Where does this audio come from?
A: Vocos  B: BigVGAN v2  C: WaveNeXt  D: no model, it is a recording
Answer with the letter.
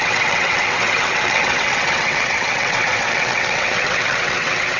C